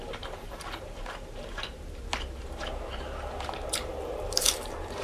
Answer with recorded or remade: remade